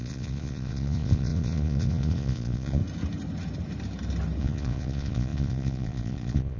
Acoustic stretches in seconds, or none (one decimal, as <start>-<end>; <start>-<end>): 2.8-4.4